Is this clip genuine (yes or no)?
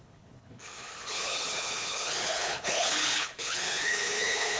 no